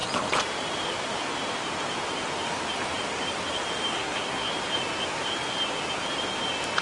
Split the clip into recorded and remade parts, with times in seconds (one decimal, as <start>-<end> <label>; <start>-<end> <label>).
0.0-3.9 recorded; 3.9-4.5 remade; 4.5-6.8 recorded